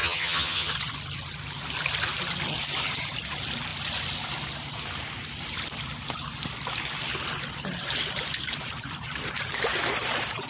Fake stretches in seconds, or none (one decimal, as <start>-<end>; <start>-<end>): 0.0-0.7